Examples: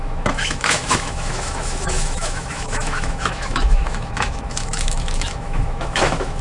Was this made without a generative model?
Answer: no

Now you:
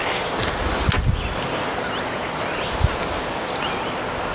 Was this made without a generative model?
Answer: yes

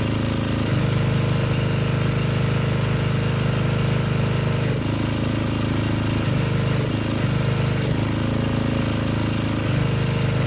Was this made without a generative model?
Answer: yes